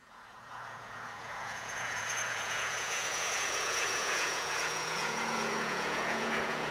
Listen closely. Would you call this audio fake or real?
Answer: fake